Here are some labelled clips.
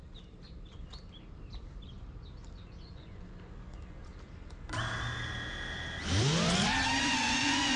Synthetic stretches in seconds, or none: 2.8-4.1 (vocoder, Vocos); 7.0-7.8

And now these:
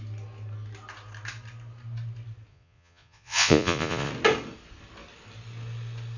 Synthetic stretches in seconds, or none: 2.5-4.1 (vocoder, Vocos)

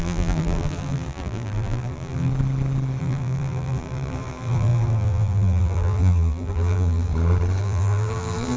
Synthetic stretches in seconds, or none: 0.0-2.3 (vocoder, BigVGAN v2); 3.0-7.1; 7.6-8.6

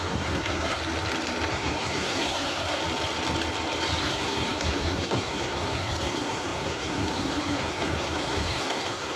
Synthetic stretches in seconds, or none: 0.0-0.8 (codec, SNAC); 1.5-2.8; 4.0-9.2

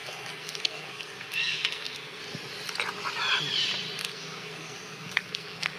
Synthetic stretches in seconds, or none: 0.0-2.2 (codec, SNAC); 4.0-5.8

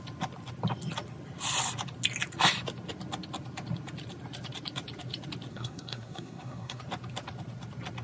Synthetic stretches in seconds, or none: 5.5-6.8 (codec, SNAC)

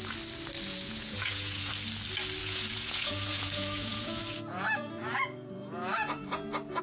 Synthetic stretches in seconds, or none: 0.7-1.7 (vocoder, Vocos); 2.4-6.8